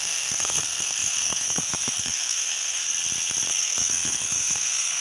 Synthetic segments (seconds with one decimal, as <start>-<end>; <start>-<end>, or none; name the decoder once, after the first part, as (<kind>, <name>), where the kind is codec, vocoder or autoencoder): 0.0-2.8 (codec, SNAC); 3.5-5.0

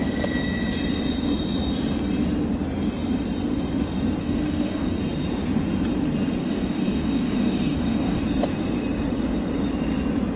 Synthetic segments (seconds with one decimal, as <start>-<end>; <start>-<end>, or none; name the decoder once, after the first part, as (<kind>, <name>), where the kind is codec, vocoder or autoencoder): 4.2-5.0 (codec, DAC); 6.4-8.2